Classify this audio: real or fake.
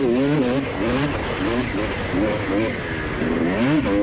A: real